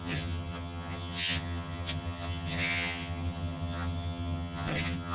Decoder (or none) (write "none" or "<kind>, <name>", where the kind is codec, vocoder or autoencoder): vocoder, HiFi-GAN